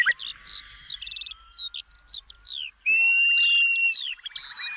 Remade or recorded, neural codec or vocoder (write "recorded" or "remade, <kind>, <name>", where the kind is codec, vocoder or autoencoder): recorded